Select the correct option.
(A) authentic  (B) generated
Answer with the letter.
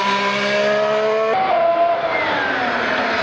A